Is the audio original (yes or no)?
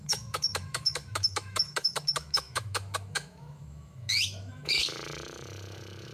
no